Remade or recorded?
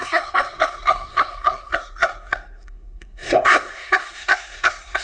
remade